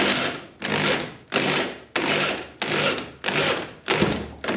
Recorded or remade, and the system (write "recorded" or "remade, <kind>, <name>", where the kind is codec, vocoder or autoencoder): recorded